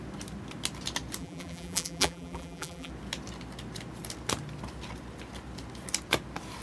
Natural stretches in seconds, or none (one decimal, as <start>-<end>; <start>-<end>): 0.0-1.2; 2.9-6.6